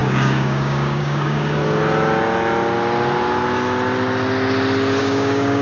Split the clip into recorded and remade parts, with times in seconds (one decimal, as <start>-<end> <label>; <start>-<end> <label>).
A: 0.0-1.6 remade; 1.6-5.0 recorded; 5.0-5.6 remade